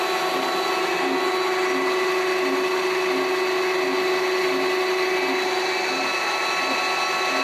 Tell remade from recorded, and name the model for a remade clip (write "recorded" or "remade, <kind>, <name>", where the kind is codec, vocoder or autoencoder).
recorded